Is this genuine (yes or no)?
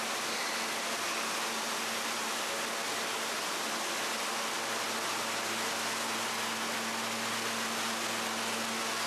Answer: yes